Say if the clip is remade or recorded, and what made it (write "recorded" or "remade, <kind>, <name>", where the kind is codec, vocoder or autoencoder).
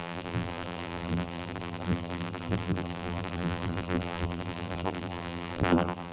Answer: remade, vocoder, BigVGAN v2